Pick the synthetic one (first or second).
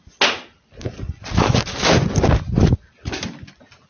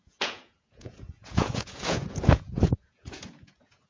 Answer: second